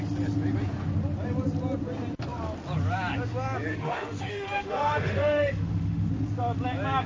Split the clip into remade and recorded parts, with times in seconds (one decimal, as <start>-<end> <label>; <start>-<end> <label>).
0.0-3.7 recorded; 3.7-6.1 remade; 6.1-7.1 recorded